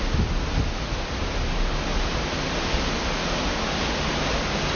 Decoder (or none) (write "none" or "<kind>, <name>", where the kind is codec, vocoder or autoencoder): none